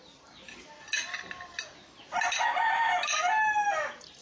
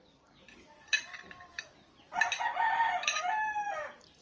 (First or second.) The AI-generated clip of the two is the second